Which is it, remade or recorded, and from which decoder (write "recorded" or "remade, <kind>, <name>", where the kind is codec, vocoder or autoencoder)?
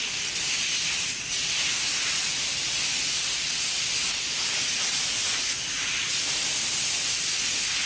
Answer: recorded